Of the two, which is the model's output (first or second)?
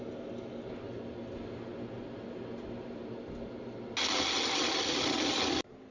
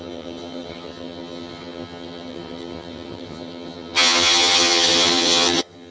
second